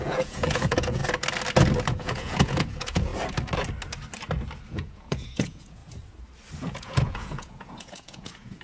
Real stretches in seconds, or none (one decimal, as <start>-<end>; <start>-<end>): 1.0-1.9; 3.1-4.7; 5.8-6.6